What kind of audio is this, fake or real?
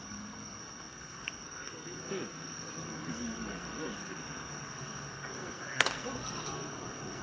fake